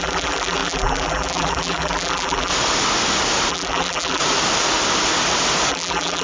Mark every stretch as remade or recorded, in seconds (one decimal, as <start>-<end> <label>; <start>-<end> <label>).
0.0-2.5 remade; 2.5-3.5 recorded; 3.5-4.2 remade; 4.2-5.7 recorded; 5.7-6.2 remade